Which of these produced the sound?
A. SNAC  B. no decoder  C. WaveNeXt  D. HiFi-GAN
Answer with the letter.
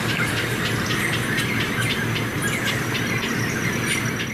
B